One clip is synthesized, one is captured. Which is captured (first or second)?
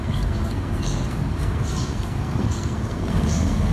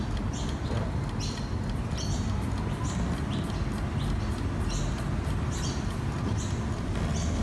second